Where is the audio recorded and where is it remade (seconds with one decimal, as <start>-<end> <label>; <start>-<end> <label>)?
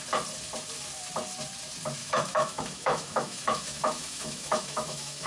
0.0-2.0 recorded; 2.0-5.3 remade